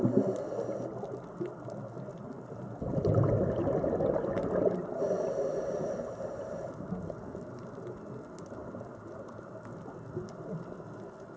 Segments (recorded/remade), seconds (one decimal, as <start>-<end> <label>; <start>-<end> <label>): 0.0-11.4 recorded